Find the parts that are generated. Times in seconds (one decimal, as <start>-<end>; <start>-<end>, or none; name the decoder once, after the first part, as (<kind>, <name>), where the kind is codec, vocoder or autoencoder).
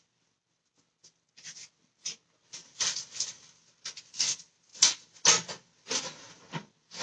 none